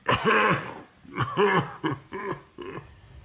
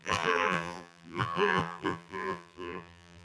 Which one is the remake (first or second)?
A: second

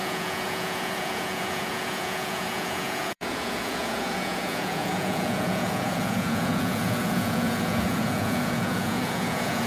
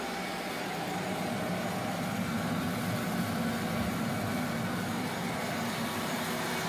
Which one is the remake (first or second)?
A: first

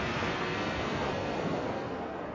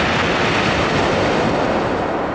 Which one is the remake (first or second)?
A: first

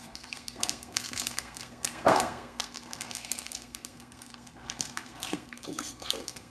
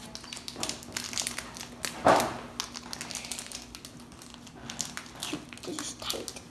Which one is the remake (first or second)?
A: first